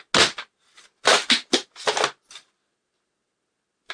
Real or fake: real